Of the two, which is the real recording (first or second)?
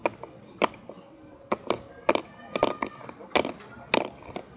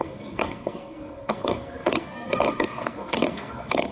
first